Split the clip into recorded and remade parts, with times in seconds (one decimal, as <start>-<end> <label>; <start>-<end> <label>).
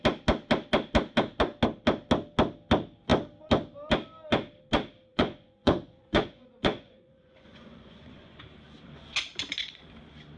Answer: 0.0-5.1 recorded; 5.1-8.4 remade; 8.4-9.3 recorded; 9.3-9.8 remade; 9.8-10.4 recorded